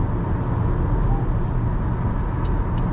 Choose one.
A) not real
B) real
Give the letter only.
B